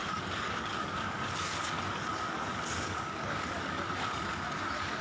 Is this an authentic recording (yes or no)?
no